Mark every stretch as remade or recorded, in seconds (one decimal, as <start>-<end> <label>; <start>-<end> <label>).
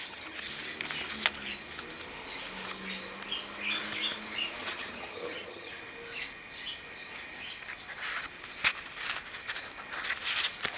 0.0-0.5 remade; 0.5-4.6 recorded; 4.6-5.7 remade; 5.7-10.8 recorded